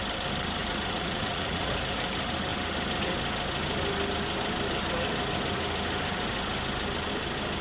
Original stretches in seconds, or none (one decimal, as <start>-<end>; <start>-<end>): 0.0-0.6; 1.7-7.6